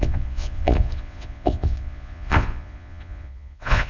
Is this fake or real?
fake